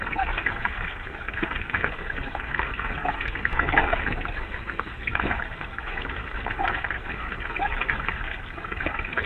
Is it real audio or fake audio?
fake